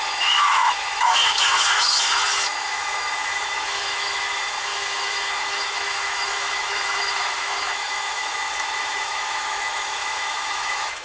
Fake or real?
fake